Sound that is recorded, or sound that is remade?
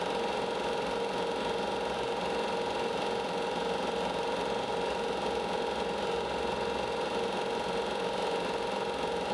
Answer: recorded